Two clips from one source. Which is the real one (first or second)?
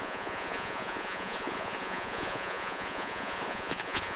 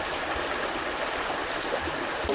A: second